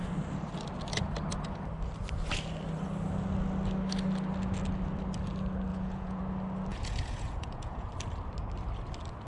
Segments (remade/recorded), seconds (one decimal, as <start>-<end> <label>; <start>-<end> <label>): 0.0-5.7 recorded; 5.7-6.2 remade; 6.2-6.7 recorded; 6.7-7.9 remade; 7.9-9.3 recorded